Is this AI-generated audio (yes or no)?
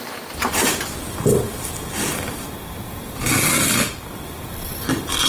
no